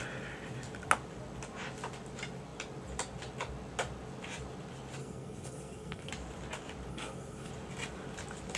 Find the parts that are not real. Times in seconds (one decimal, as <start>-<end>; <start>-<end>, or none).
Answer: 5.0-6.1; 6.9-7.5